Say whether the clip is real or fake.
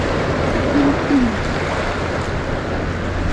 real